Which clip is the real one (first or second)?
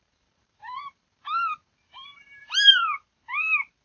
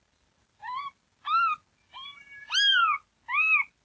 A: second